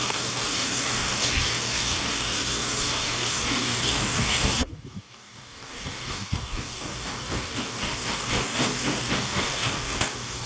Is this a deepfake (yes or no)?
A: yes